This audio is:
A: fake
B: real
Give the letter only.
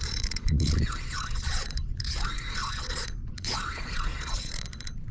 A